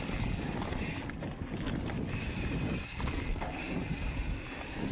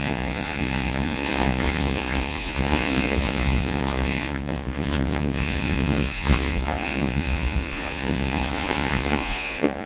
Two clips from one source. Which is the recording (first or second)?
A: first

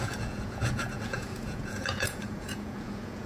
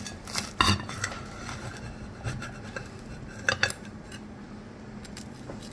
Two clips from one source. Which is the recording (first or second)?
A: second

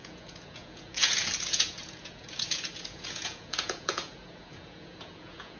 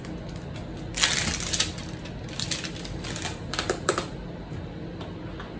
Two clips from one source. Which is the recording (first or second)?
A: second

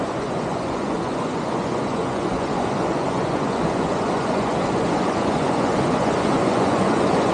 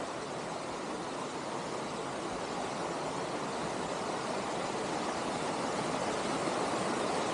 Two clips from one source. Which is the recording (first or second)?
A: second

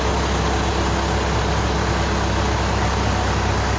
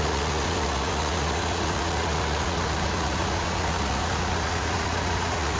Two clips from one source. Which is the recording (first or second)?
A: first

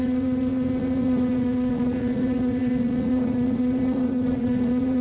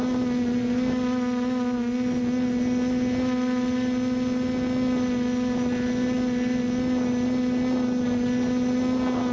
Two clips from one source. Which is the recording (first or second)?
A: second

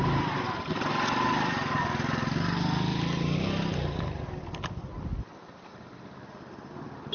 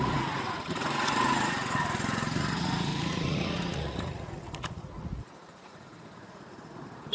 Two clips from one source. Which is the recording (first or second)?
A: first